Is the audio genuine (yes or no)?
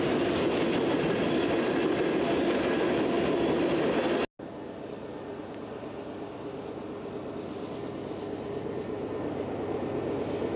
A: yes